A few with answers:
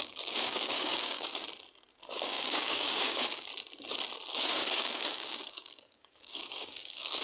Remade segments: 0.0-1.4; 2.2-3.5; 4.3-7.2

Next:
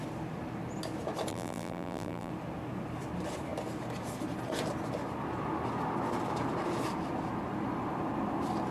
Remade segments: 1.3-2.3

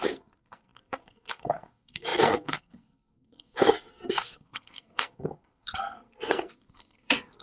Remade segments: 0.0-7.4

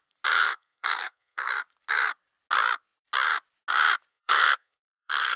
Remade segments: 0.4-1.5; 4.1-5.4

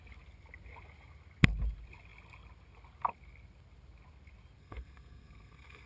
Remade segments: 4.6-5.9

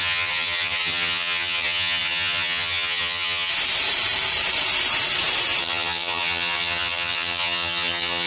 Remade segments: 0.0-3.5; 5.6-8.3

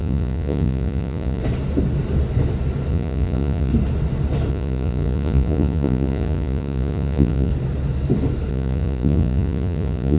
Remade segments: 0.0-1.4; 2.9-3.7; 4.5-7.5; 8.5-10.2

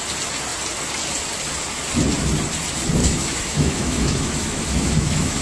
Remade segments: 3.0-5.4